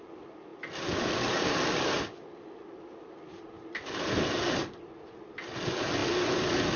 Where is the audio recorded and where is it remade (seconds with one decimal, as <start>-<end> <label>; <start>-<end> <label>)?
0.0-6.8 recorded

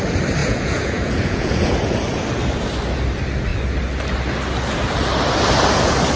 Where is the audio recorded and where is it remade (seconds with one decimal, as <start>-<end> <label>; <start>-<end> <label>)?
0.0-0.4 recorded; 0.4-1.7 remade; 1.7-6.2 recorded